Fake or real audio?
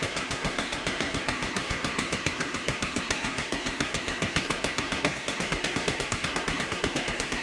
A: fake